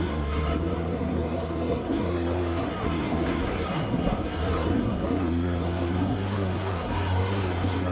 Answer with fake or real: fake